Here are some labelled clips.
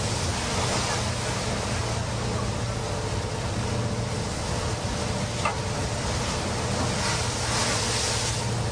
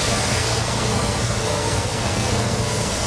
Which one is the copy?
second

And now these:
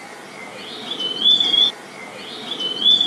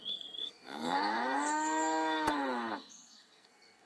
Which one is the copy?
second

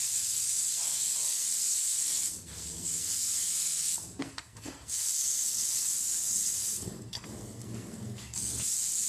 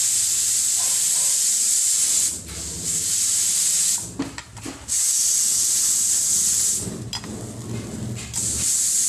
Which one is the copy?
first